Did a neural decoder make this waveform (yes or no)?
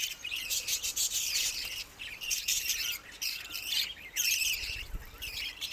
yes